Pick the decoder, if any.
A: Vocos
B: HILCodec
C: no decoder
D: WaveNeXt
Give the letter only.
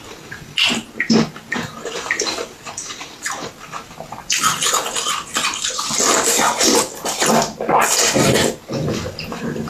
C